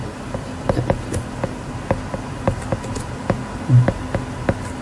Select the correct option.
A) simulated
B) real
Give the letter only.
B